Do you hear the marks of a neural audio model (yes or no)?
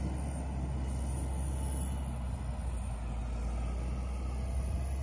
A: no